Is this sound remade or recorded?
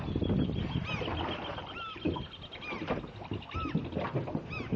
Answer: recorded